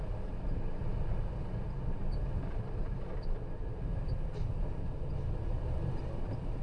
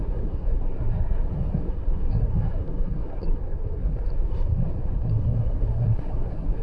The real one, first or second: first